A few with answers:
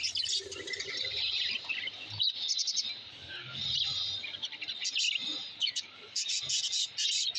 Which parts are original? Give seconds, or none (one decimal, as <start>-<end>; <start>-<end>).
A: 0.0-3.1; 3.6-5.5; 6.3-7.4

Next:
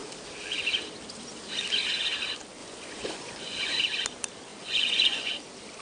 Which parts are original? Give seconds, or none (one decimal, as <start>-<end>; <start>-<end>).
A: 0.0-2.6; 3.8-4.5; 5.3-5.8

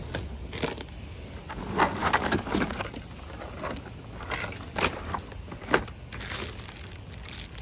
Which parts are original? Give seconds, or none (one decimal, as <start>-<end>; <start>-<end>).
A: 0.0-2.0; 2.8-7.6

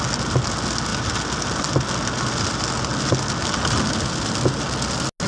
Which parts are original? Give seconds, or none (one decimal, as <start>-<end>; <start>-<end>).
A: 0.0-5.3

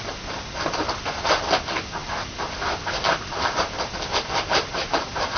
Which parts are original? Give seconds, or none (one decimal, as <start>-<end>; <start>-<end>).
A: 0.0-2.0; 3.8-5.4

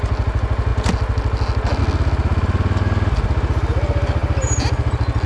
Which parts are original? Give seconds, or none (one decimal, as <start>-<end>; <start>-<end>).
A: 0.0-5.3